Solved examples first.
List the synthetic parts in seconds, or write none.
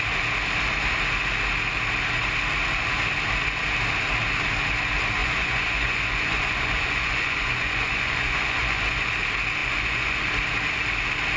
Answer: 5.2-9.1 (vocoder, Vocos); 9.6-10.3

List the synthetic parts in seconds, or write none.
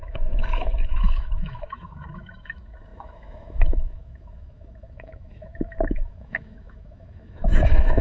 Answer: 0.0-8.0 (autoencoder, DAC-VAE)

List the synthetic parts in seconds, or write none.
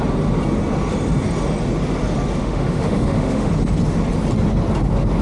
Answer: 2.4-3.5 (autoencoder, DAC-VAE)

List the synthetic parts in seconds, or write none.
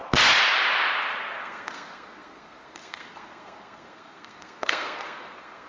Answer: 1.4-5.7 (codec, SNAC)